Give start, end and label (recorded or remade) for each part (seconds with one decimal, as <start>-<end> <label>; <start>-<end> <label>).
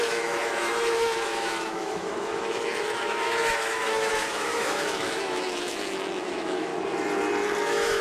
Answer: 0.0-6.7 remade; 6.7-7.6 recorded; 7.6-8.0 remade